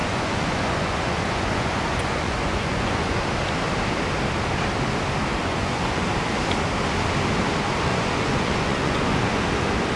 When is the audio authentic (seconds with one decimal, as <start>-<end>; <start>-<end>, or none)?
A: 3.2-5.4; 6.1-7.9; 9.4-10.0